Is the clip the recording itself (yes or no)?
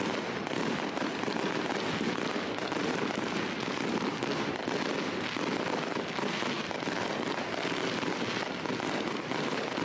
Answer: yes